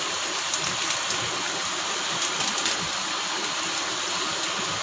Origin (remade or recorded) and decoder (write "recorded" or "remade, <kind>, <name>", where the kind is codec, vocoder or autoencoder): recorded